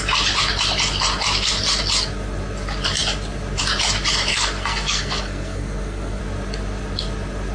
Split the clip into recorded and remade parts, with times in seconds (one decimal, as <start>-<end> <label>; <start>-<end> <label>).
0.0-4.3 recorded; 4.3-6.2 remade; 6.2-7.5 recorded